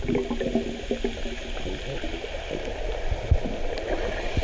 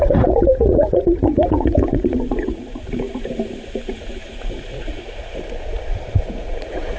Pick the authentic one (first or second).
first